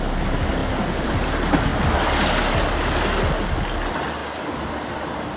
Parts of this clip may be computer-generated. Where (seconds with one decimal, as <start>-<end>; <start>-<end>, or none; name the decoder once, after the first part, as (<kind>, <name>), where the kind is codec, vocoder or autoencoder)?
none